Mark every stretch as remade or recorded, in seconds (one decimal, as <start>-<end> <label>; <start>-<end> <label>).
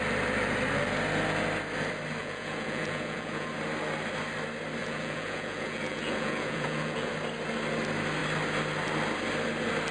0.0-2.2 recorded; 2.2-3.5 remade; 3.5-4.8 recorded; 4.8-7.1 remade; 7.1-9.9 recorded